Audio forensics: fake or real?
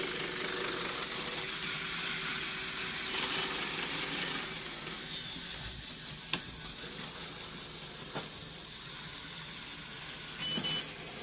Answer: real